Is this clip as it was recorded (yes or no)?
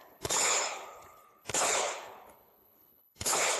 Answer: no